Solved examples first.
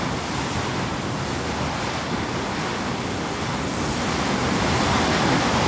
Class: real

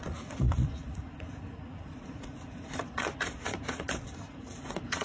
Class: fake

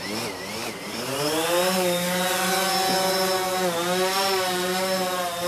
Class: real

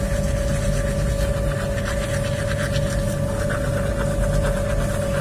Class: real